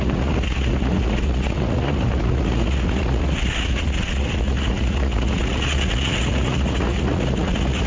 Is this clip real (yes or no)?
no